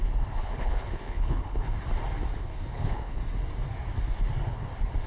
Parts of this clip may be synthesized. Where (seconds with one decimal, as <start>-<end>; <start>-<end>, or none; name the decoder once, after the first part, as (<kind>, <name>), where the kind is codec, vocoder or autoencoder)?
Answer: 0.4-1.8 (codec, HILCodec); 2.3-3.2